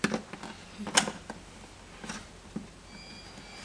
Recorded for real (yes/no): yes